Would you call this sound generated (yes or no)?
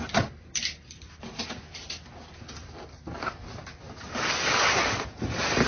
no